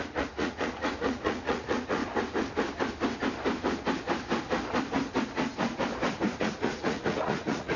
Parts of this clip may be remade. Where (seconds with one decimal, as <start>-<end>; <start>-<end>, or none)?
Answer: 0.0-2.0; 6.4-7.8